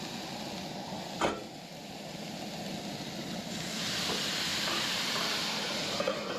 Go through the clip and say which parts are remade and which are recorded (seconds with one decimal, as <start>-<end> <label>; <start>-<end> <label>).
0.0-4.5 recorded; 4.5-6.4 remade